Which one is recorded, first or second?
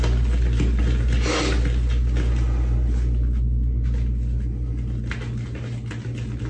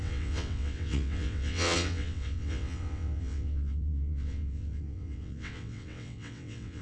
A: first